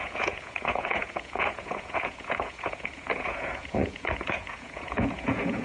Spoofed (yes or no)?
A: yes